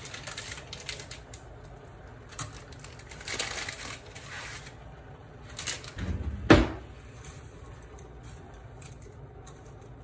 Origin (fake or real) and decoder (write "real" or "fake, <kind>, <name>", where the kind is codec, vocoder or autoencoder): real